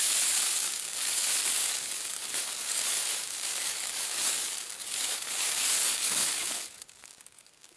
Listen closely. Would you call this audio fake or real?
fake